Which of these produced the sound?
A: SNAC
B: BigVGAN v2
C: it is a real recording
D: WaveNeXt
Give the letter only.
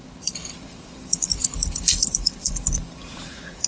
B